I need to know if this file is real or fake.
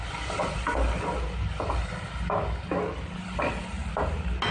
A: real